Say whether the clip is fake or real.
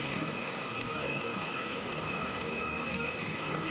fake